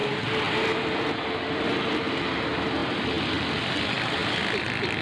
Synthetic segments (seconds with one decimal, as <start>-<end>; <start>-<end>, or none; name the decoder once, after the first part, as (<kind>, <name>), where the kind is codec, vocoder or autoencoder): none